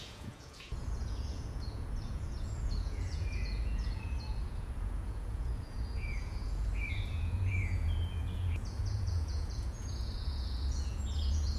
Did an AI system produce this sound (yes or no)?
yes